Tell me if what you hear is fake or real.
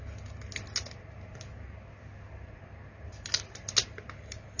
real